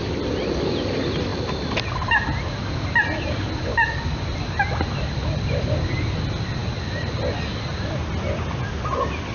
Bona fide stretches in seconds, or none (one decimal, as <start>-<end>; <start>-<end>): 0.0-9.3